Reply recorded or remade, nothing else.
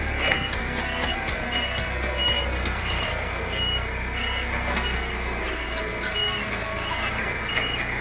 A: remade